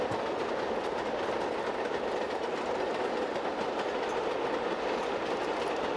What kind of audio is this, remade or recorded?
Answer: recorded